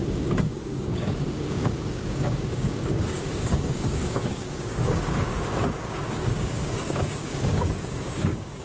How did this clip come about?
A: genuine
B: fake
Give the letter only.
B